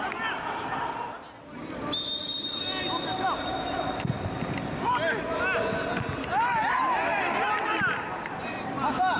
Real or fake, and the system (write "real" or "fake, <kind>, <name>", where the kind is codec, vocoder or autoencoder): real